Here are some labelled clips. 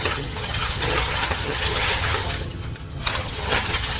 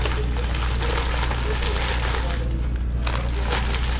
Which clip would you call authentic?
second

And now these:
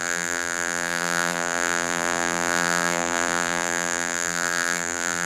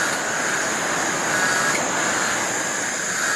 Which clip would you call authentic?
second